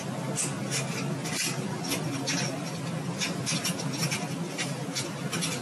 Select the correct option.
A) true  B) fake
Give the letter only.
A